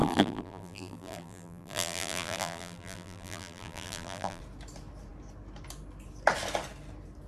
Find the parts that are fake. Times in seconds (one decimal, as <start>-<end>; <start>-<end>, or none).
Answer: 0.0-4.4